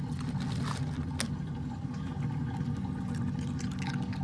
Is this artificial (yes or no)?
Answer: no